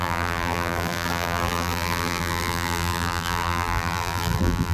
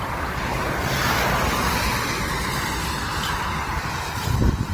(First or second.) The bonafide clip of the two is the second